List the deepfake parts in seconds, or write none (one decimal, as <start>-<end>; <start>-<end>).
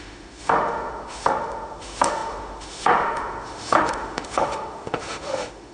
0.0-5.7